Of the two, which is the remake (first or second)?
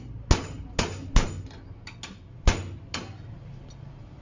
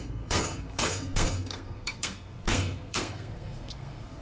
second